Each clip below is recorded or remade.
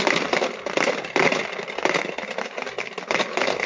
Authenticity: recorded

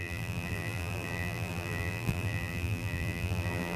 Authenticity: remade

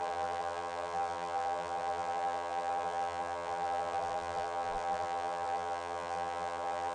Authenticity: remade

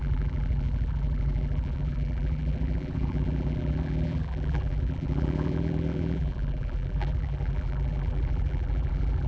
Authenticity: remade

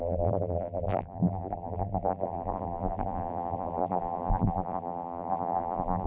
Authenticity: remade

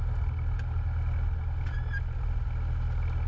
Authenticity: recorded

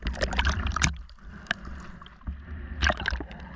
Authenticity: recorded